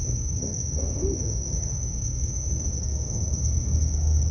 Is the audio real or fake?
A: fake